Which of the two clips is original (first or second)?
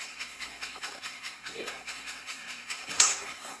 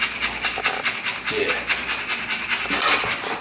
second